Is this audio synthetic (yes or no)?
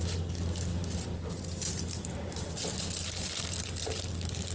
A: yes